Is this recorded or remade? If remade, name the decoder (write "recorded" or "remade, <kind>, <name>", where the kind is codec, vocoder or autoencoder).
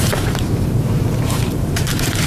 remade, vocoder, BigVGAN v2